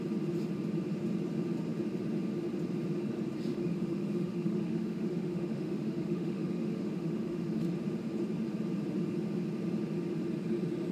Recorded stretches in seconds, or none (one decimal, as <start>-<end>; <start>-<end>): 0.0-3.5; 7.7-10.9